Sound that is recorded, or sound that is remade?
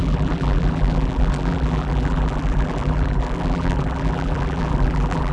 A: remade